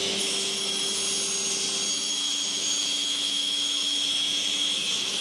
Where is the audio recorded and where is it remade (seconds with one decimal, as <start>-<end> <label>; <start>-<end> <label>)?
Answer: 0.0-1.0 remade; 1.0-1.9 recorded; 1.9-5.2 remade